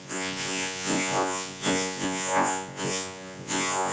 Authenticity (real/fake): fake